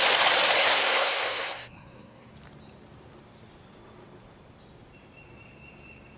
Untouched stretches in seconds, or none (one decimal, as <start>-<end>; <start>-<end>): 0.0-0.6; 2.3-6.2